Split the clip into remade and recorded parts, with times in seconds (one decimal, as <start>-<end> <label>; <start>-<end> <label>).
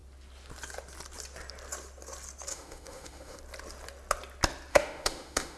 0.0-2.5 recorded; 2.5-3.4 remade; 3.4-4.7 recorded; 4.7-5.6 remade